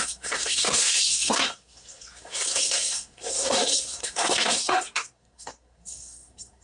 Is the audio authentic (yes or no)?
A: no